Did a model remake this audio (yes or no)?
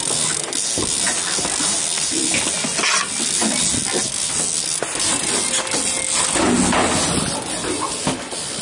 no